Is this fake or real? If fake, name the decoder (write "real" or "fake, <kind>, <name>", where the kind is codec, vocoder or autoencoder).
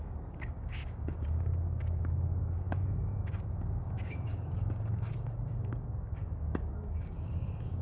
fake, codec, DAC